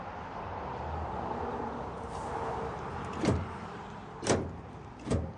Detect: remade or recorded remade